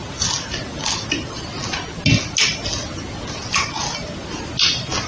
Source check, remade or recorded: recorded